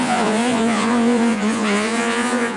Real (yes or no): no